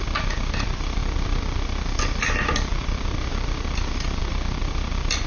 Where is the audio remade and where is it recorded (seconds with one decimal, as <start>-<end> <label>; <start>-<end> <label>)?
0.0-5.3 recorded